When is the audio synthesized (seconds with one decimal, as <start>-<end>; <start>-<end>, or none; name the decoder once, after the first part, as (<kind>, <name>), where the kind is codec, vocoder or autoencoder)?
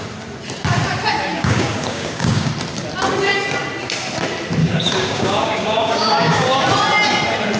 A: 1.3-2.5 (codec, DAC); 4.6-6.6